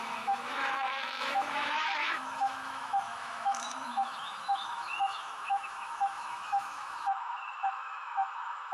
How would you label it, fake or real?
fake